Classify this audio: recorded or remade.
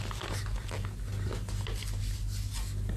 recorded